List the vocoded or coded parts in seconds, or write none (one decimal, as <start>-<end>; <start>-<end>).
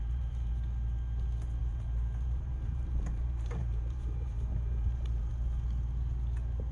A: 0.0-0.5; 1.6-5.3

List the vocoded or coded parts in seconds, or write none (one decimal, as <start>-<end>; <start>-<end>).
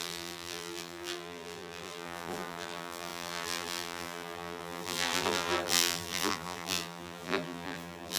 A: 0.0-8.2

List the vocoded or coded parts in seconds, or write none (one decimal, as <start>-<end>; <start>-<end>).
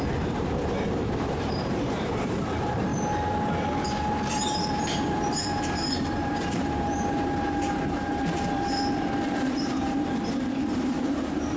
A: 0.0-2.9; 4.3-11.6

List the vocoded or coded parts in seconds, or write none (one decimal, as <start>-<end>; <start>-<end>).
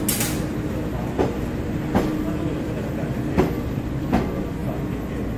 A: 2.1-3.9; 4.6-5.4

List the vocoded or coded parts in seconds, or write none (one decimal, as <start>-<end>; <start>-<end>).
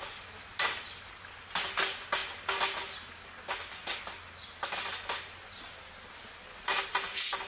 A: none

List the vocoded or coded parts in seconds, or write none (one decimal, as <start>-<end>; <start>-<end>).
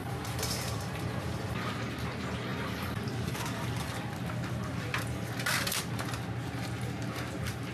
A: 0.0-1.7; 2.5-5.8